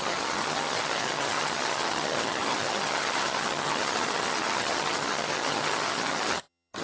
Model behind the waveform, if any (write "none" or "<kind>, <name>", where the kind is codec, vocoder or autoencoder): vocoder, HiFi-GAN